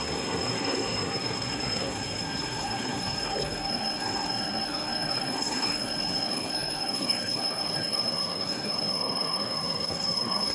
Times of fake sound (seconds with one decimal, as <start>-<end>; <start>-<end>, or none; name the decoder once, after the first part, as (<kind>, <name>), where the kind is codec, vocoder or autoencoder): 0.0-10.5 (codec, SNAC)